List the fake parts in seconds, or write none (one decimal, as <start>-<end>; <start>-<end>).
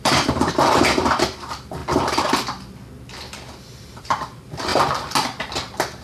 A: 0.0-1.8; 4.0-4.7; 5.4-6.0